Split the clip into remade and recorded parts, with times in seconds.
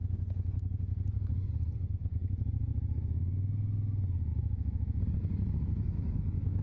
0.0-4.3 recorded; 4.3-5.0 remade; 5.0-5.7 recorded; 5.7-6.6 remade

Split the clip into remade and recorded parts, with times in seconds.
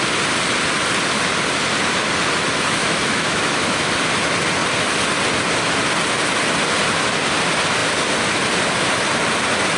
0.0-2.8 recorded; 2.8-3.9 remade; 3.9-9.8 recorded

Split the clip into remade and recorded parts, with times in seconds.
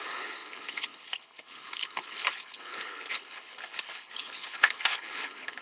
0.0-5.6 remade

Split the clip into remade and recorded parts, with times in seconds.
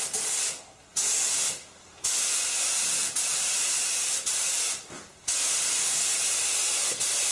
0.0-7.3 recorded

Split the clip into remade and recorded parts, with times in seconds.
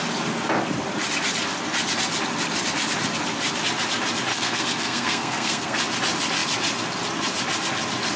0.0-4.3 recorded; 4.3-5.8 remade; 5.8-8.2 recorded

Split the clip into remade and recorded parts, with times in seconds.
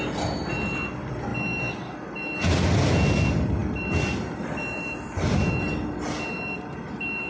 0.0-7.3 recorded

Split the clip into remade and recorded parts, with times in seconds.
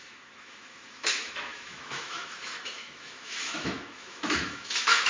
0.0-5.1 remade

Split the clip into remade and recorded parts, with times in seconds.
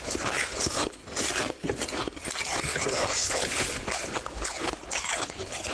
0.0-1.0 remade; 1.0-2.6 recorded; 2.6-5.7 remade